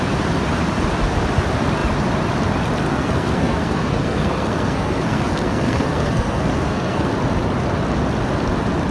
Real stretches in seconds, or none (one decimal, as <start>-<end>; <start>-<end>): 0.0-2.9; 7.1-8.9

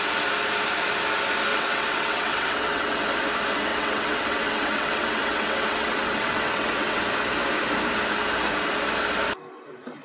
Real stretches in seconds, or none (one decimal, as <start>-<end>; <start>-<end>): 0.0-1.5; 3.0-3.7; 7.0-10.0

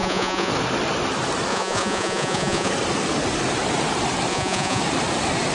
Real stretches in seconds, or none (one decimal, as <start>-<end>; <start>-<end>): 0.5-1.5; 2.7-4.3; 4.8-5.5

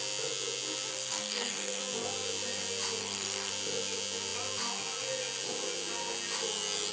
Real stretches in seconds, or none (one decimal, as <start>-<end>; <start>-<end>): 0.0-0.9; 1.8-3.0; 3.5-6.9

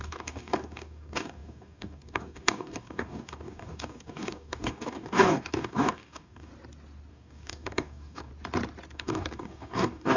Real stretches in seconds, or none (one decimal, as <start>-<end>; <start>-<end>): 6.5-7.1; 8.3-8.9

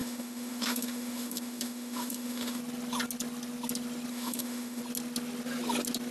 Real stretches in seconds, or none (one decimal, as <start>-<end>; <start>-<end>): 2.6-4.1; 4.8-6.1